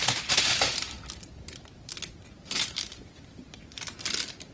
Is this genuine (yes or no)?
yes